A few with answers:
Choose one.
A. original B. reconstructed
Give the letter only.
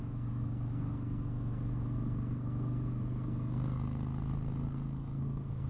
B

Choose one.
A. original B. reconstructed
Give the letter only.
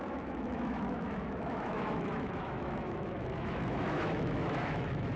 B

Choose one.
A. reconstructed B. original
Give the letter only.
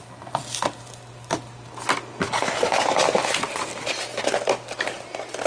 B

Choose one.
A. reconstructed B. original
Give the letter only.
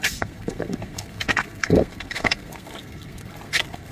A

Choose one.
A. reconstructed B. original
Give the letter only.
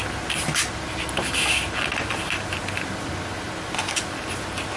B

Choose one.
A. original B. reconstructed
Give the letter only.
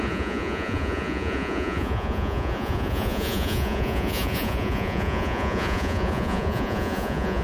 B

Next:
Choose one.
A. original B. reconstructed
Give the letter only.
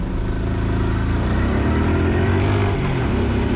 A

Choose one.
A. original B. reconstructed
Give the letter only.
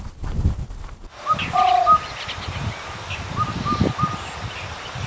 A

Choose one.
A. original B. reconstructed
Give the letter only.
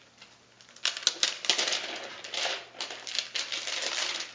A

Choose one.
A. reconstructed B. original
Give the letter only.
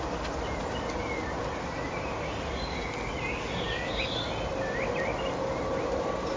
B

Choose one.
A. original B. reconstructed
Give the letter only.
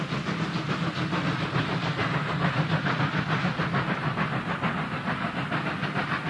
A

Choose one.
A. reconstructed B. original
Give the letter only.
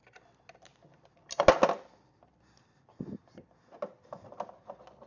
B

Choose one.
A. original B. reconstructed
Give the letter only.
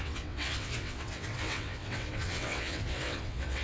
B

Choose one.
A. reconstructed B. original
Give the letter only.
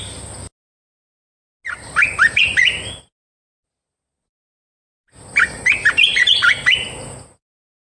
B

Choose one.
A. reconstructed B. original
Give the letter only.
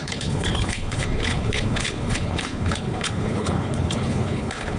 A